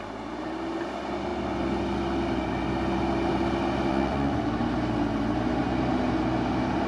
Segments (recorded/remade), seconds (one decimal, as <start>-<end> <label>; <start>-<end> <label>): 0.0-3.9 recorded; 3.9-4.4 remade; 4.4-6.9 recorded